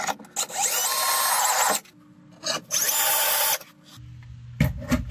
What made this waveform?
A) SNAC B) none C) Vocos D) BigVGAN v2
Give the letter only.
B